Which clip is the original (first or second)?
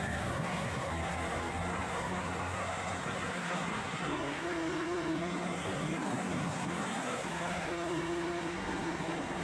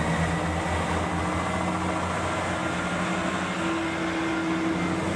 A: second